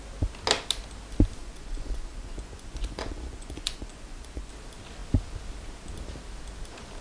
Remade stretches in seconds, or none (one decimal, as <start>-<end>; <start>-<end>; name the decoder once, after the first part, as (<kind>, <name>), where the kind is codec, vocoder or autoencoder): 1.4-4.5 (vocoder, Vocos)